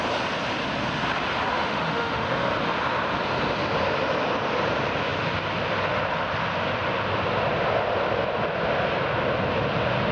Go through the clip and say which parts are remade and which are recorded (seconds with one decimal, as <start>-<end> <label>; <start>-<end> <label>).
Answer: 0.0-1.5 recorded; 1.5-2.5 remade; 2.5-10.1 recorded